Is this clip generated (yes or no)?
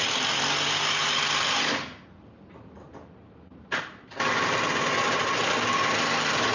no